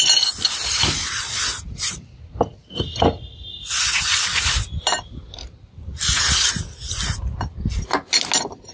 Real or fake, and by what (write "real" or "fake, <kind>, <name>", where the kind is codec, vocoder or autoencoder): real